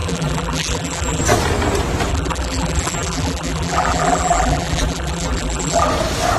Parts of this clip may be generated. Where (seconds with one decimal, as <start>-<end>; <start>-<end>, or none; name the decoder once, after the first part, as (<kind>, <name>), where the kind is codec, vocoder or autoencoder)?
0.0-1.2 (vocoder, BigVGAN v2); 2.1-5.9